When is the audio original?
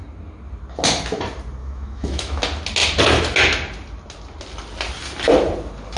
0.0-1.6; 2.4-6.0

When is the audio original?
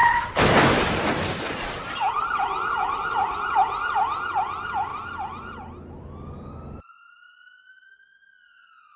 0.0-9.0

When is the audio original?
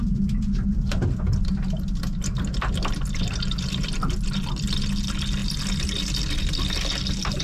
0.0-7.4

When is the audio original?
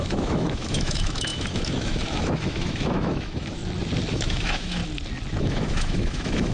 3.6-4.1; 4.8-5.4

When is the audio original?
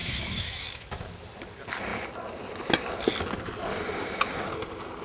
1.1-5.0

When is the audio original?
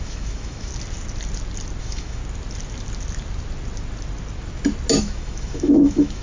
0.7-1.8; 2.2-5.0